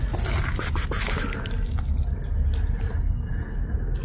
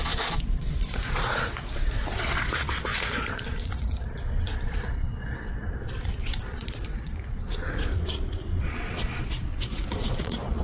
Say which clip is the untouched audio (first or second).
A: first